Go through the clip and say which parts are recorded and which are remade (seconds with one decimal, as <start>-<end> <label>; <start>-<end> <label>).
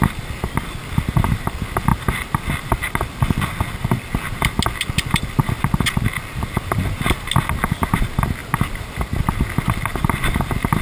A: 0.0-10.8 recorded